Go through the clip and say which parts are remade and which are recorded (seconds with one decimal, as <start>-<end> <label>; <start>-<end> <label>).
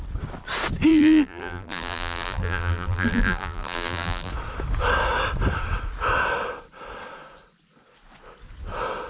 0.0-0.9 recorded; 0.9-4.3 remade; 4.3-9.1 recorded